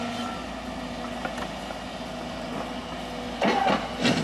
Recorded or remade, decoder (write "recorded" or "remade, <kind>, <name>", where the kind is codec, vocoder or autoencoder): recorded